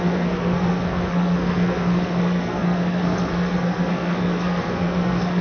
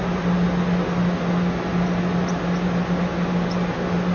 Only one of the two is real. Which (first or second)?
second